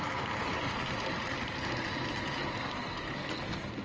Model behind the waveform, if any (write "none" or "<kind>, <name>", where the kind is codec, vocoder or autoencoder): none